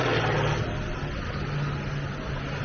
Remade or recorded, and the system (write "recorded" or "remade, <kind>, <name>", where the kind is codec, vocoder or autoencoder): recorded